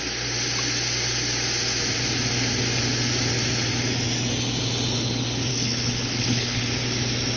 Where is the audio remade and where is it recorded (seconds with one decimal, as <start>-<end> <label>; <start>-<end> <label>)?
0.0-5.5 recorded; 5.5-6.6 remade; 6.6-7.4 recorded